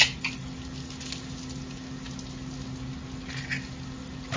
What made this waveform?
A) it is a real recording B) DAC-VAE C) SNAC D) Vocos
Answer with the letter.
A